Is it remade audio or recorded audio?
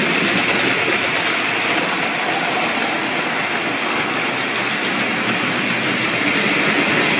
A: recorded